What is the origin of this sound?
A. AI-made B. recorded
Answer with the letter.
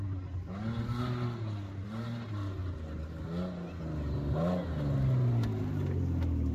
B